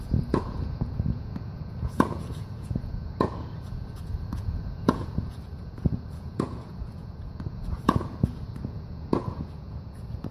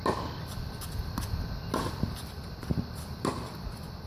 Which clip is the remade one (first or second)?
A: first